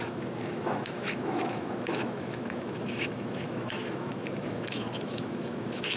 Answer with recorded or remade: remade